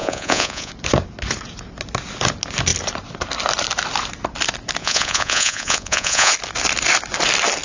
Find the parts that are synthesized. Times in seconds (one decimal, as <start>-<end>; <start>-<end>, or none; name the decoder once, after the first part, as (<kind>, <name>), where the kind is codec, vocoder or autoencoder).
0.0-0.7 (vocoder, Vocos); 4.8-6.3